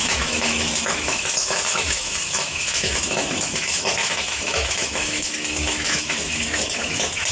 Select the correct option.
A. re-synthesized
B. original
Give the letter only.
A